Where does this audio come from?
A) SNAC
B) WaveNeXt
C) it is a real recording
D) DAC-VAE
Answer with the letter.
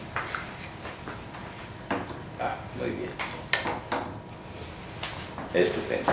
C